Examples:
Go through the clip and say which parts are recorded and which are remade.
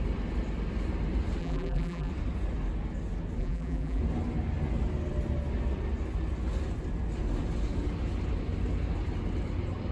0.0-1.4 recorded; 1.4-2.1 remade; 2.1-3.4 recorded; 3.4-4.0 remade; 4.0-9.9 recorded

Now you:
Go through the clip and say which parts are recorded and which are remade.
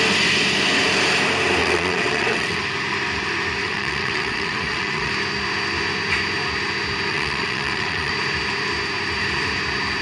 0.0-1.6 recorded; 1.6-2.6 remade; 2.6-3.6 recorded; 3.6-5.1 remade; 5.1-7.1 recorded; 7.1-8.1 remade; 8.1-10.0 recorded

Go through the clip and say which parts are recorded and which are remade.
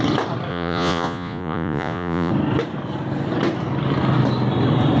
0.0-0.5 recorded; 0.5-2.3 remade; 2.3-5.0 recorded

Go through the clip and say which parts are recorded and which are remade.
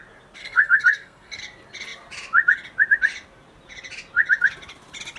0.0-0.4 recorded; 0.4-1.4 remade; 1.4-5.2 recorded